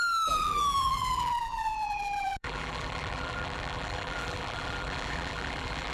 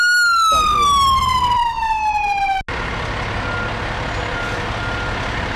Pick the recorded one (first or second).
second